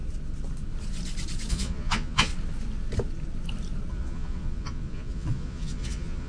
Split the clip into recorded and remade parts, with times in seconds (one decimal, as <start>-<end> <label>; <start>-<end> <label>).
0.0-1.5 recorded; 1.5-2.3 remade; 2.3-3.9 recorded; 3.9-6.3 remade